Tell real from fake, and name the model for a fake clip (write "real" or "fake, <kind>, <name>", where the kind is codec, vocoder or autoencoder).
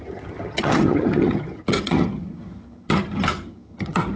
fake, vocoder, HiFi-GAN